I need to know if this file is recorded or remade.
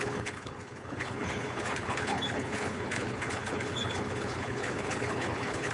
remade